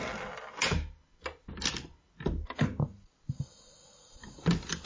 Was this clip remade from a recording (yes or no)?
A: no